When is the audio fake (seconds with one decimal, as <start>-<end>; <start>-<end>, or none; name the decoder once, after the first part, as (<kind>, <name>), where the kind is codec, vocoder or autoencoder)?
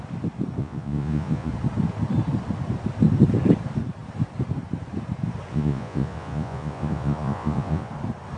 0.6-1.5 (vocoder, Vocos); 5.5-7.9